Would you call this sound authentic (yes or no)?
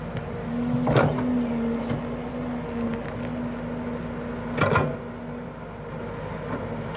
yes